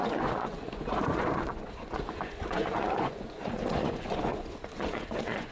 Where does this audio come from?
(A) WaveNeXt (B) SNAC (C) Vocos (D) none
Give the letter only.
C